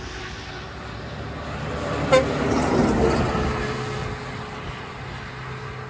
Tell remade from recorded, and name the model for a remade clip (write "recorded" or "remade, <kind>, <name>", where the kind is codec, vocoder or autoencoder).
recorded